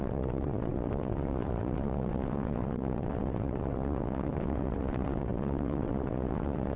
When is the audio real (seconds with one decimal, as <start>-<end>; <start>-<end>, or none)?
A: none